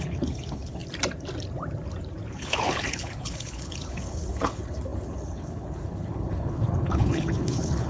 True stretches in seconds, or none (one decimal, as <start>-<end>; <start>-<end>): 0.8-2.3